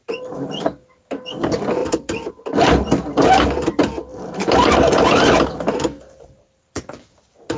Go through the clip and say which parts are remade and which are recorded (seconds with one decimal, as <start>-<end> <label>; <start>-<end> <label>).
0.0-0.6 remade; 0.6-1.8 recorded; 1.8-2.3 remade; 2.3-4.1 recorded; 4.1-4.8 remade; 4.8-7.6 recorded